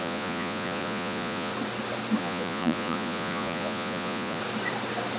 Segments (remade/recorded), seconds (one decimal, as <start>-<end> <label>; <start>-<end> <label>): 0.0-1.5 remade; 1.5-2.2 recorded; 2.2-4.4 remade; 4.4-5.2 recorded